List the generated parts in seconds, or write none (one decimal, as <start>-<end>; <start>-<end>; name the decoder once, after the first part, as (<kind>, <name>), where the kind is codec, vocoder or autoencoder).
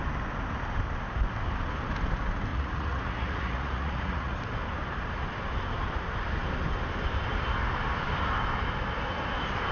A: 2.5-4.4 (vocoder, Vocos)